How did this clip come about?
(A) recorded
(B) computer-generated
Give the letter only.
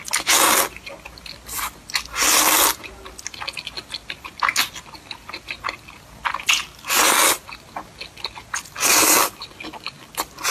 A